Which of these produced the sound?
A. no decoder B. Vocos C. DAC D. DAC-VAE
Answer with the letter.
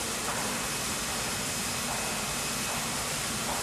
A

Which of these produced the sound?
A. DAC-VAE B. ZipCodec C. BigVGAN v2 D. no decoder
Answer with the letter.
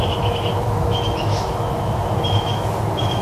A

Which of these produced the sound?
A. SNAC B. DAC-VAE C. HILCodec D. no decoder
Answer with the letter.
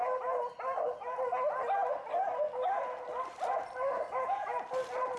D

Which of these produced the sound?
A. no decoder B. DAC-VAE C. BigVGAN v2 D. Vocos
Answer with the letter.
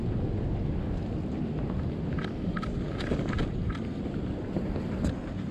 A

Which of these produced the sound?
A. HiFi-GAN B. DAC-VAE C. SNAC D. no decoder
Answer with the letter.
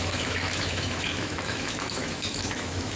B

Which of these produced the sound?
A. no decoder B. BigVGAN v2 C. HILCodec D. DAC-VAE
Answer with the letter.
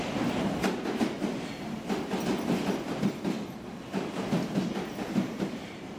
A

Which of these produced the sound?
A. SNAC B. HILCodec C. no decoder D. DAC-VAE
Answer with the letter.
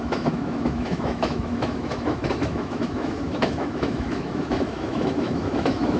D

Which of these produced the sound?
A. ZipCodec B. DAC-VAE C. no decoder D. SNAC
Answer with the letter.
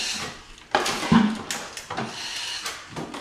C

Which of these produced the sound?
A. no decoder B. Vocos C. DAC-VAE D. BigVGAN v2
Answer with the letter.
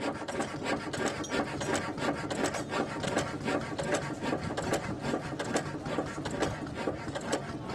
A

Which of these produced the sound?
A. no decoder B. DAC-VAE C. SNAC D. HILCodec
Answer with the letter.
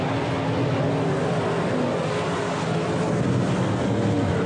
A